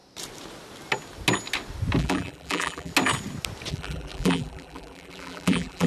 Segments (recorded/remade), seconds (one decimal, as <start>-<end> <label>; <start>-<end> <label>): 0.0-2.0 recorded; 2.0-2.9 remade; 2.9-3.7 recorded; 3.7-5.9 remade

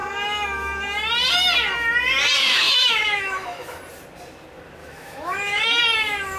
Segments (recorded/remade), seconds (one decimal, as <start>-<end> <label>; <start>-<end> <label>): 0.0-2.4 recorded; 2.4-3.8 remade; 3.8-4.8 recorded; 4.8-5.8 remade; 5.8-6.4 recorded

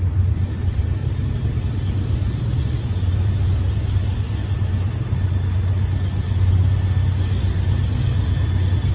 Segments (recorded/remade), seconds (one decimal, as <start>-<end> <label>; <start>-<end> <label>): 0.0-1.0 remade; 1.0-1.6 recorded; 1.6-4.4 remade; 4.4-8.3 recorded; 8.3-8.9 remade

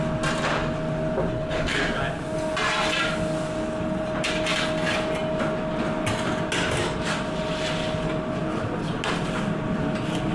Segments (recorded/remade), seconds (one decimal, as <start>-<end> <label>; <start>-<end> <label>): 0.0-1.3 recorded; 1.3-1.8 remade; 1.8-10.3 recorded

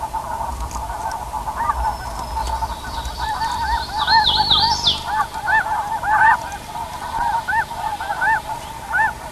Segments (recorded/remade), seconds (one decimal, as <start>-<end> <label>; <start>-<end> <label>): 0.0-6.4 recorded; 6.4-7.5 remade; 7.5-9.3 recorded

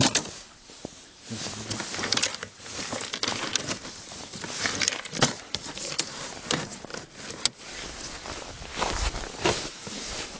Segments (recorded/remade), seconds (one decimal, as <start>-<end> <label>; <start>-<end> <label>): 0.0-0.9 remade; 0.9-3.6 recorded; 3.6-6.9 remade; 6.9-7.6 recorded; 7.6-8.7 remade; 8.7-9.8 recorded; 9.8-10.4 remade

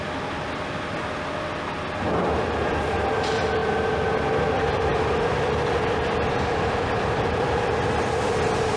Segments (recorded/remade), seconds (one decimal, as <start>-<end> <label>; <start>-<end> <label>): 0.0-4.9 recorded; 4.9-7.2 remade; 7.2-8.8 recorded

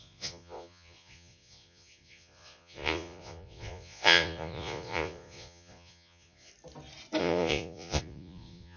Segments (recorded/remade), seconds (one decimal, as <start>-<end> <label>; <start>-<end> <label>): 0.0-6.5 remade; 6.5-7.2 recorded; 7.2-8.8 remade